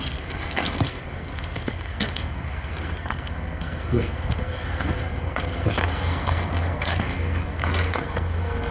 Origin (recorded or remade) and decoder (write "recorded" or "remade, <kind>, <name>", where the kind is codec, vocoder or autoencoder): remade, codec, SNAC